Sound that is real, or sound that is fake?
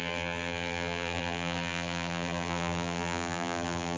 fake